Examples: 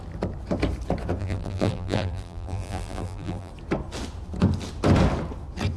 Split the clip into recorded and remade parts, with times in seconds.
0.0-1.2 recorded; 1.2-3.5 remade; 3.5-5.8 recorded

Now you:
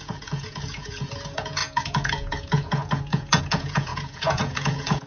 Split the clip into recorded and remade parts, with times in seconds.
0.0-5.1 remade

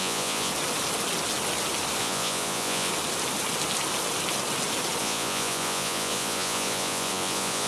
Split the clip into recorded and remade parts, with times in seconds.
0.0-0.5 remade; 0.5-2.0 recorded; 2.0-2.9 remade; 2.9-5.0 recorded; 5.0-7.7 remade

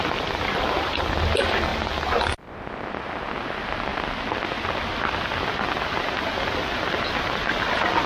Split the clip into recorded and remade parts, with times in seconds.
0.0-8.1 recorded